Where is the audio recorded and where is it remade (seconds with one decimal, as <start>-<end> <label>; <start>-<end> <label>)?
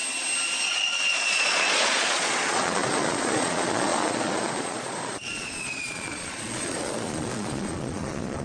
0.0-0.7 recorded; 0.7-8.4 remade